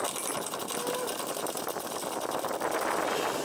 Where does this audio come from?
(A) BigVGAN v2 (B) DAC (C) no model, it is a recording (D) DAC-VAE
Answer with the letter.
C